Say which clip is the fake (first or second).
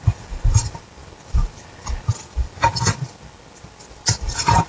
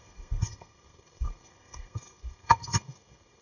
second